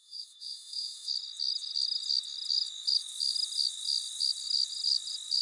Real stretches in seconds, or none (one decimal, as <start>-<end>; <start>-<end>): 1.1-5.4